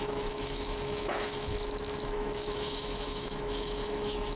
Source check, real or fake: fake